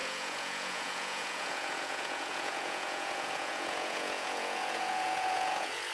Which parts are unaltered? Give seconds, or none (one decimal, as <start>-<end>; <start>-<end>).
none